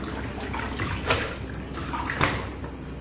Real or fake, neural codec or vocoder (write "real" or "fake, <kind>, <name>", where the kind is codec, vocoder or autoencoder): real